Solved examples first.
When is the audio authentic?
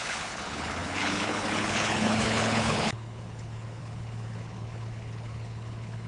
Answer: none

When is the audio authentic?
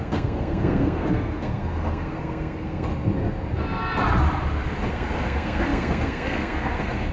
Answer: 2.9-4.9